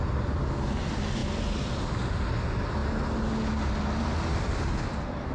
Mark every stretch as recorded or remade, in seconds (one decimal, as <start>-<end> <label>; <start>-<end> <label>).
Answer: 0.0-5.3 recorded